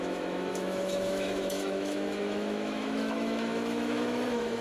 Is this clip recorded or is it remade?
remade